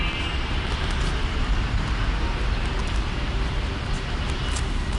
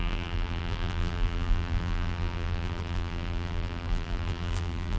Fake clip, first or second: second